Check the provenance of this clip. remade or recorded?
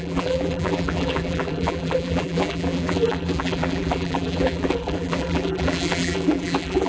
remade